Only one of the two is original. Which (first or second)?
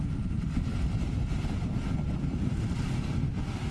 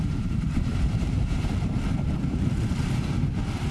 first